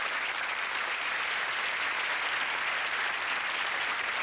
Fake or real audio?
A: real